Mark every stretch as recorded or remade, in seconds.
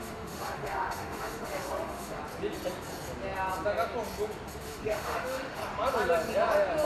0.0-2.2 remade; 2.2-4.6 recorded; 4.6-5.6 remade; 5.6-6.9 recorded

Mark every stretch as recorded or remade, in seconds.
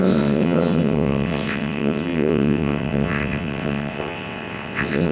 0.0-5.1 remade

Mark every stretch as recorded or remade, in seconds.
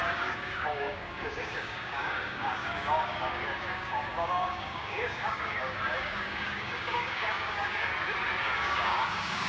0.0-7.9 remade; 7.9-8.4 recorded; 8.4-9.5 remade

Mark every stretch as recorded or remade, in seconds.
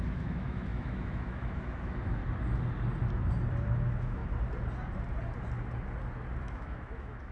0.0-2.2 remade; 2.2-3.7 recorded; 3.7-4.2 remade; 4.2-6.4 recorded; 6.4-7.3 remade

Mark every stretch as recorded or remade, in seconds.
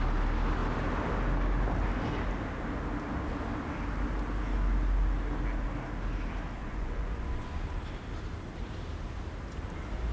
0.0-6.6 recorded; 6.6-7.6 remade; 7.6-10.1 recorded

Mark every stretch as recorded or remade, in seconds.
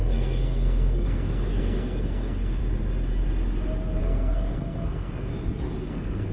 0.0-2.6 remade; 2.6-4.0 recorded; 4.0-5.3 remade; 5.3-5.8 recorded; 5.8-6.3 remade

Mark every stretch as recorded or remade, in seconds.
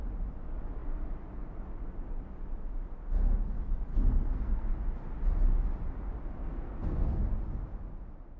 0.0-3.9 recorded; 3.9-4.7 remade; 4.7-6.4 recorded; 6.4-7.2 remade; 7.2-8.4 recorded